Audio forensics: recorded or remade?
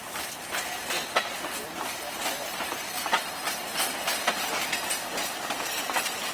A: recorded